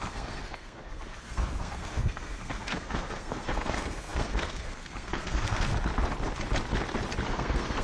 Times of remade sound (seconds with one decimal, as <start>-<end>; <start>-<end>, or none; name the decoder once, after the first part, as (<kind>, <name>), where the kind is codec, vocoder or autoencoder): 0.0-5.7 (codec, SNAC); 7.3-7.8